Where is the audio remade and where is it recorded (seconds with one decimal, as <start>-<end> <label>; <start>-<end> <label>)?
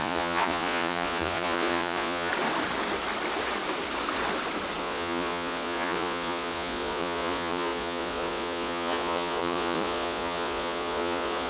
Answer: 0.0-2.3 remade; 2.3-4.8 recorded; 4.8-11.5 remade